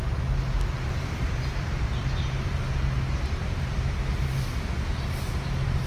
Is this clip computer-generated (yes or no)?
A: no